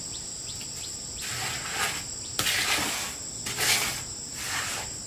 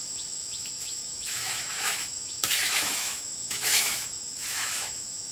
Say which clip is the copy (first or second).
second